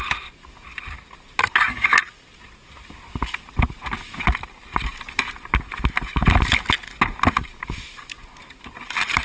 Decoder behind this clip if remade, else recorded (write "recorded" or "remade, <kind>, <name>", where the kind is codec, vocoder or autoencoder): recorded